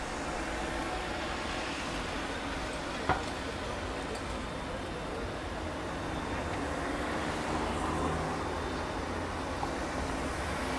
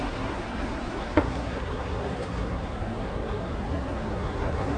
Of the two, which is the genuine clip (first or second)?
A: first